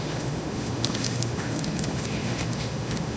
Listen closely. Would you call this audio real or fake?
fake